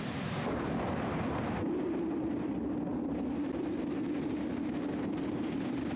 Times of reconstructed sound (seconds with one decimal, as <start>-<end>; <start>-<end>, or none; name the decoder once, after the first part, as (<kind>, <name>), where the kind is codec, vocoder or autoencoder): 2.9-6.0 (vocoder, BigVGAN v2)